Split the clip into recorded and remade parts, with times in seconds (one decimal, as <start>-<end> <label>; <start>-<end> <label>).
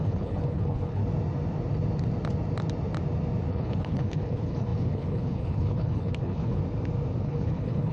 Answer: 0.0-1.0 remade; 1.0-3.5 recorded; 3.5-6.6 remade; 6.6-7.2 recorded; 7.2-7.9 remade